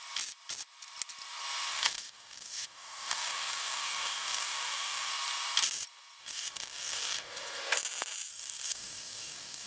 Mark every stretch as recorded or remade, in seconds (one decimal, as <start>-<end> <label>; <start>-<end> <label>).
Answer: 0.0-1.7 recorded; 1.7-5.1 remade; 5.1-6.2 recorded; 6.2-7.6 remade; 7.6-8.3 recorded; 8.3-9.7 remade